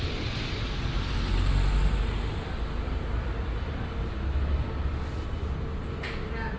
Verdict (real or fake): real